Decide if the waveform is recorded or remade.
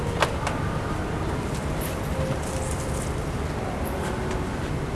recorded